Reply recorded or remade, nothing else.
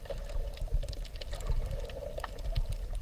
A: recorded